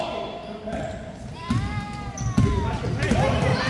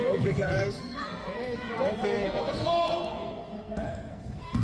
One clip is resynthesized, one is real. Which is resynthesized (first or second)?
second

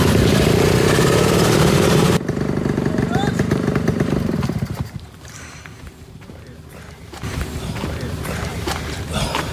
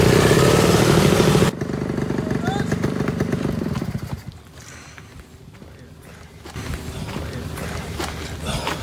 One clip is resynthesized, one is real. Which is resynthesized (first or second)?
first